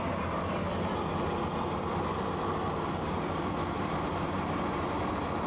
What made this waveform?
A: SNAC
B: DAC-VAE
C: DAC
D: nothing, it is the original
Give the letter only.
D